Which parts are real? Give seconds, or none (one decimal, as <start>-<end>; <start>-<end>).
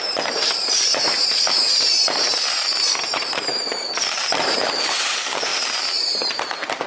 none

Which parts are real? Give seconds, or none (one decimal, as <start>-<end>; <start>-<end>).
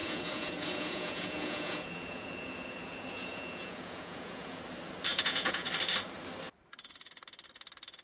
4.6-5.1; 5.7-8.0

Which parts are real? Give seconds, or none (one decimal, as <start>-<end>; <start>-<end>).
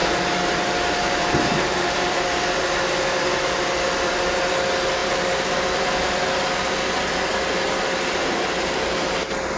4.5-5.0; 6.6-9.6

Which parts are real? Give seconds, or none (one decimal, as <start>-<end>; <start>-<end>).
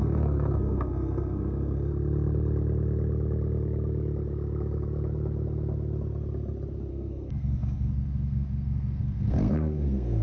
1.9-6.9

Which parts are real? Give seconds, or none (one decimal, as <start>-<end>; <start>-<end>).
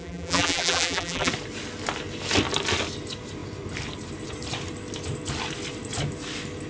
1.3-6.7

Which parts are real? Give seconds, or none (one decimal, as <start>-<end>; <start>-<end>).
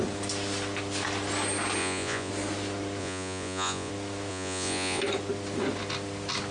0.0-1.8; 2.3-3.0; 3.9-4.3; 5.0-6.5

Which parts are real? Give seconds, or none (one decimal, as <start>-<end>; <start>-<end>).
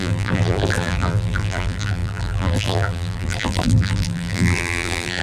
none